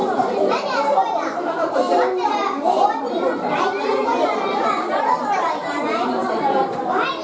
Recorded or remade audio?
remade